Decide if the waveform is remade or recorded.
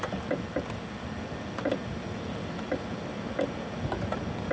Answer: recorded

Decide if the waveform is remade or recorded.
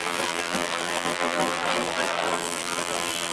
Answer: remade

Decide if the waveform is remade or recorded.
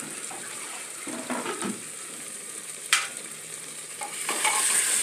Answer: remade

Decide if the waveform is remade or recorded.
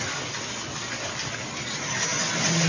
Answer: recorded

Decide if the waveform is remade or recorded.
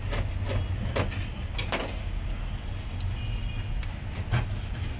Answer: recorded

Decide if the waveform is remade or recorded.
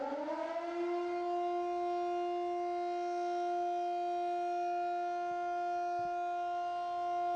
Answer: recorded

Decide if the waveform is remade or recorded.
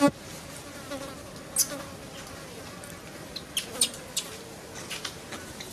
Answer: recorded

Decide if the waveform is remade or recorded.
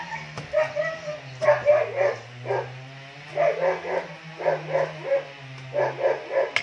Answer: recorded